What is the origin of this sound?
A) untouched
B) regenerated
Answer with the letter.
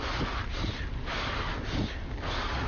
A